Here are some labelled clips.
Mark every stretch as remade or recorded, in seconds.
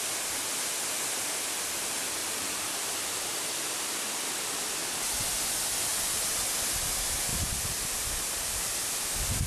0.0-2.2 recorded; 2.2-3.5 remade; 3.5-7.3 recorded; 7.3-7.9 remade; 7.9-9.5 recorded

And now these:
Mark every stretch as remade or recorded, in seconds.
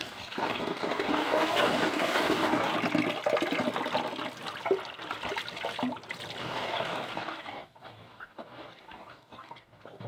0.0-2.7 remade; 2.7-6.4 recorded; 6.4-10.1 remade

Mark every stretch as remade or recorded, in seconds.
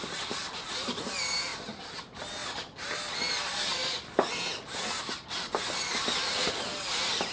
0.0-2.4 recorded; 2.4-3.3 remade; 3.3-7.3 recorded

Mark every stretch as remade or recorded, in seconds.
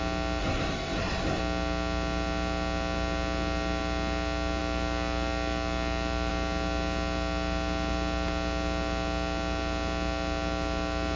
0.0-0.4 recorded; 0.4-1.4 remade; 1.4-11.2 recorded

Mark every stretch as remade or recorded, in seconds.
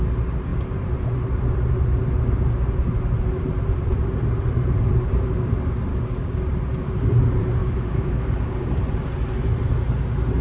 0.0-5.9 recorded; 5.9-6.4 remade; 6.4-7.6 recorded; 7.6-8.8 remade; 8.8-10.4 recorded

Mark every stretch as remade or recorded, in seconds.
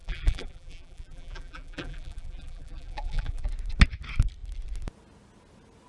0.0-3.5 remade; 3.5-5.9 recorded